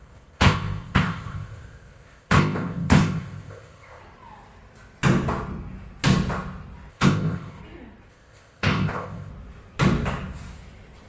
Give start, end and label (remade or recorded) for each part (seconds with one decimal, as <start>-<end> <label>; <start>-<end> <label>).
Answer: 0.0-4.0 remade; 4.0-6.9 recorded; 6.9-7.6 remade; 7.6-8.1 recorded; 8.1-9.3 remade; 9.3-11.1 recorded